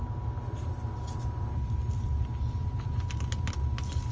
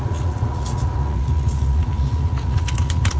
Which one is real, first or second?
first